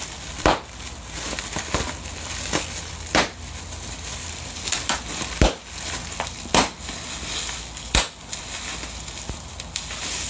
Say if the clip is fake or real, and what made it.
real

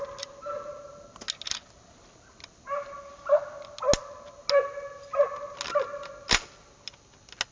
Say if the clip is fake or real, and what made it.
real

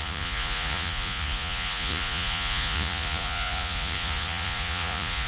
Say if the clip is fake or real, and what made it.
fake, vocoder, Vocos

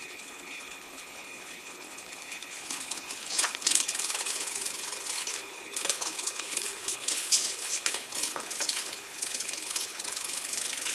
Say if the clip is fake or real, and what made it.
fake, codec, HILCodec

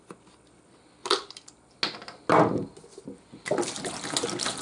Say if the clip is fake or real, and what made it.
real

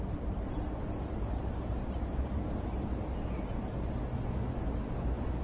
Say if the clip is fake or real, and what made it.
real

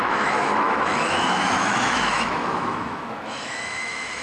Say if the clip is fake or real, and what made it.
fake, autoencoder, DAC-VAE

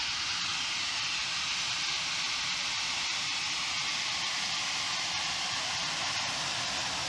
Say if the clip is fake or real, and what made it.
real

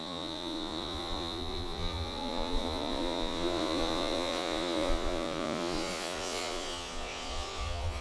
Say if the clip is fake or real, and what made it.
fake, vocoder, Vocos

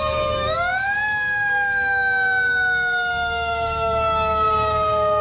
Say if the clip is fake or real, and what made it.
fake, codec, DAC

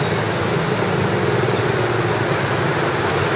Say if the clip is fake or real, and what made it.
real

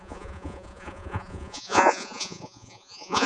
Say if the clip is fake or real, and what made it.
fake, vocoder, Vocos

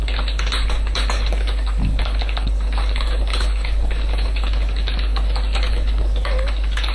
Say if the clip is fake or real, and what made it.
fake, codec, DAC